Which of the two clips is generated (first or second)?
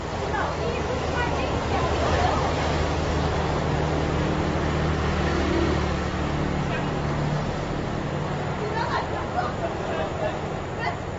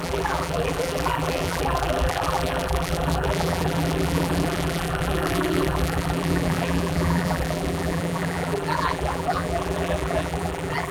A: second